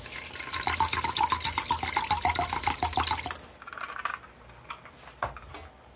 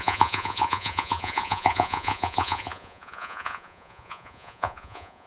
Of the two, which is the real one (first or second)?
first